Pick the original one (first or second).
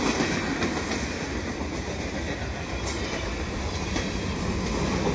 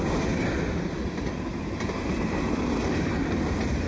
first